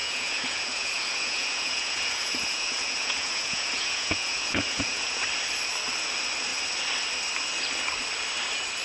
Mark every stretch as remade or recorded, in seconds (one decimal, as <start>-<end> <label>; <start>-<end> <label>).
0.0-5.2 remade; 5.2-8.8 recorded